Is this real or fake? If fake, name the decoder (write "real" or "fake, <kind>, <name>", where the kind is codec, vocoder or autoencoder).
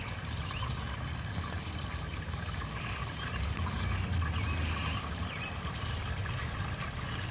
real